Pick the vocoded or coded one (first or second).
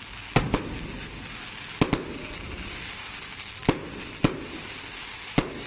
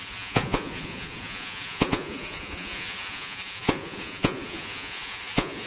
second